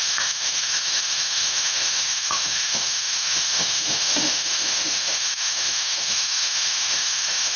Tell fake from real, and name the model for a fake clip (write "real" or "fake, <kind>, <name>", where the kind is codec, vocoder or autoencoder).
fake, autoencoder, DAC-VAE